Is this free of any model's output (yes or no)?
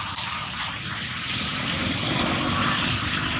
yes